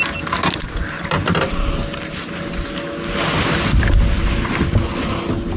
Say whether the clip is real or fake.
real